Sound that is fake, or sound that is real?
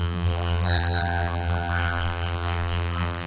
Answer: fake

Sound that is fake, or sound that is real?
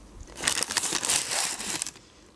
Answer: real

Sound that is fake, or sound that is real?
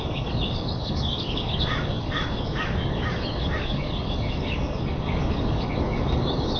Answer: fake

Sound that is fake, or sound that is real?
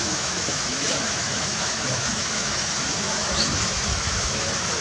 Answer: fake